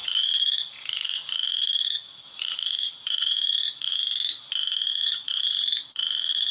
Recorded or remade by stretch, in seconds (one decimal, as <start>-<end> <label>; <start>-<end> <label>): 0.0-3.9 remade; 3.9-4.9 recorded; 4.9-6.5 remade

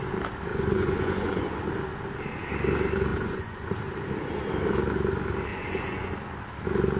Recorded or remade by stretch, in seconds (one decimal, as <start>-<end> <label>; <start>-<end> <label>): 0.0-0.5 recorded; 0.5-1.5 remade; 1.5-3.1 recorded; 3.1-3.7 remade; 3.7-5.5 recorded; 5.5-6.1 remade; 6.1-7.0 recorded

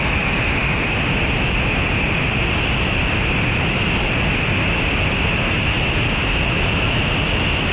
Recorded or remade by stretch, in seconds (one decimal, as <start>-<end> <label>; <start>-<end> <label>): 0.0-7.7 recorded

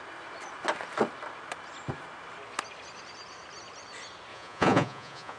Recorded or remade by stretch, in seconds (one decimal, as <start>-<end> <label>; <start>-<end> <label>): 0.0-4.3 recorded; 4.3-5.4 remade